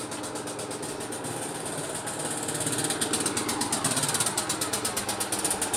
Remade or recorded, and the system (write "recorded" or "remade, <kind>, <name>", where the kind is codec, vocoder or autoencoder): recorded